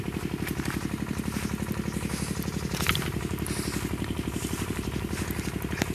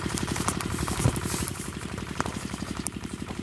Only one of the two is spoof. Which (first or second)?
second